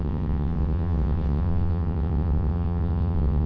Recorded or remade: remade